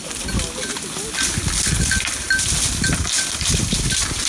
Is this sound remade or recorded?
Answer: recorded